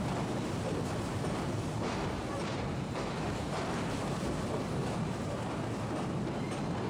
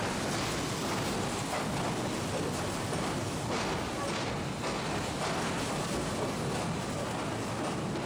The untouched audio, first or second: second